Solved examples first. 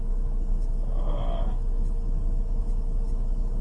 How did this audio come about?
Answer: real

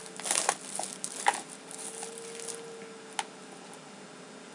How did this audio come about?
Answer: real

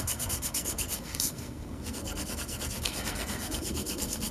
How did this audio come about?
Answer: fake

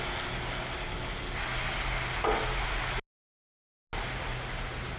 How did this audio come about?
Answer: real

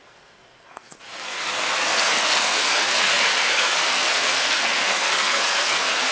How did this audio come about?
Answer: fake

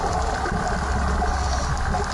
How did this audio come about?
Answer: real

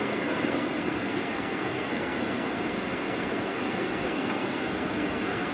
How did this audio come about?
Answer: fake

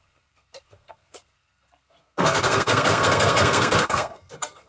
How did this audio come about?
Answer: fake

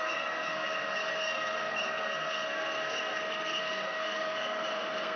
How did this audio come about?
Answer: fake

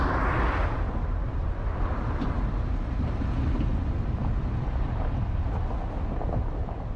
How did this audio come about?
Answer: real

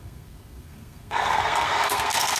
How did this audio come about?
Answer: fake